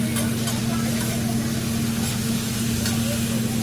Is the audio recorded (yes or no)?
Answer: yes